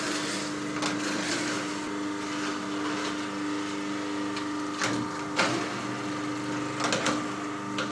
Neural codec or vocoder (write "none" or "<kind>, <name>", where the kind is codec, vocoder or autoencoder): none